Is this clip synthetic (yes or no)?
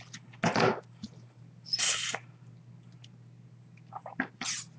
no